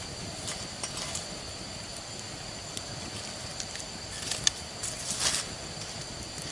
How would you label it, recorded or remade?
recorded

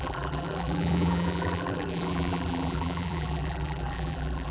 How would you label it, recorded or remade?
remade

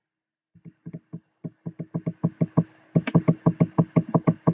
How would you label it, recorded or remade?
recorded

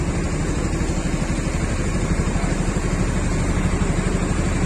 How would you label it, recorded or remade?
recorded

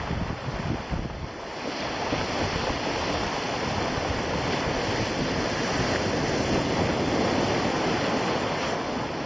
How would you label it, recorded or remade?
recorded